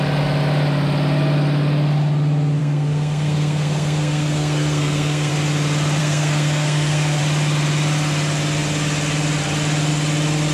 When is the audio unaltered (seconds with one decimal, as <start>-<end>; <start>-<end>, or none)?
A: 0.0-2.6; 5.3-6.0; 7.2-10.5